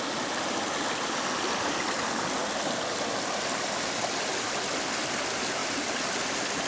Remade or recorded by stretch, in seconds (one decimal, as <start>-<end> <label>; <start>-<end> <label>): 0.0-6.7 recorded